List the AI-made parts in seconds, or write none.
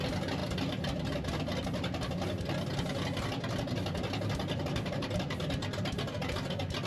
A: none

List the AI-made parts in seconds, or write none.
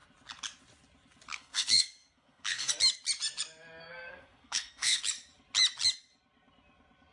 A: 1.3-2.7 (codec, SNAC); 3.8-5.0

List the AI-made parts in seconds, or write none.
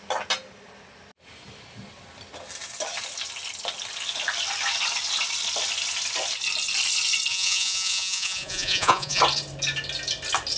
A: 7.3-9.2 (vocoder, Vocos)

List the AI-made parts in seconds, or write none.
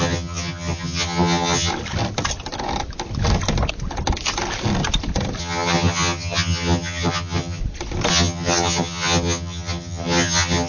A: 0.0-1.7 (vocoder, HiFi-GAN); 5.4-7.6; 8.1-10.7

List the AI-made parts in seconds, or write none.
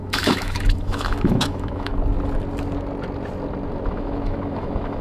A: 0.0-1.9 (autoencoder, DAC-VAE); 3.9-5.0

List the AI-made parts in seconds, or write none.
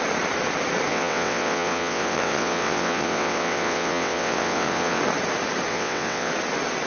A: 0.9-5.0 (vocoder, WaveNeXt); 5.7-6.3